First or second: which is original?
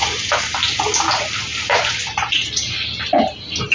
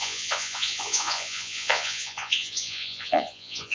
first